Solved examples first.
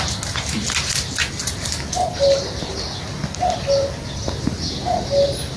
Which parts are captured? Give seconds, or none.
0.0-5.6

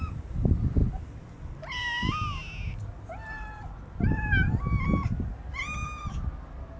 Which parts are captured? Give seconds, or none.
0.0-6.8

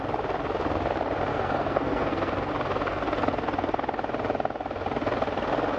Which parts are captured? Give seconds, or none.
0.0-1.3; 2.5-2.9; 3.8-5.8

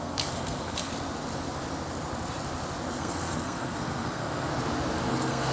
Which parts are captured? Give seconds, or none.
0.9-2.9; 4.5-5.1

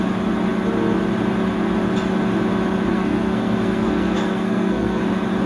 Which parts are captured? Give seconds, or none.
0.0-2.9; 5.0-5.5

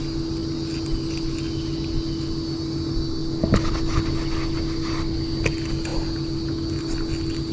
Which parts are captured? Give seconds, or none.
0.0-7.5

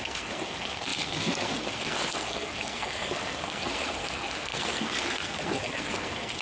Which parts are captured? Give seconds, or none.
none